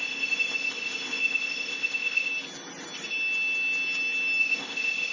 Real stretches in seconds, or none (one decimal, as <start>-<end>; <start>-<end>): 2.3-4.4